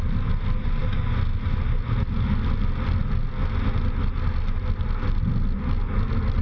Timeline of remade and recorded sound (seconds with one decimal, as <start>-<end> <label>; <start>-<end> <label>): 0.0-6.4 recorded